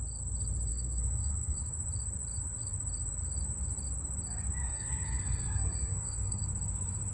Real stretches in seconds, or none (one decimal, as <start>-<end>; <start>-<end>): 0.0-0.7; 1.6-4.7; 6.4-7.1